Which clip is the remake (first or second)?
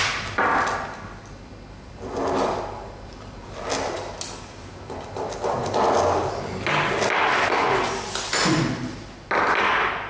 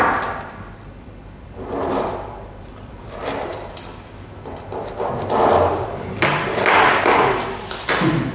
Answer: second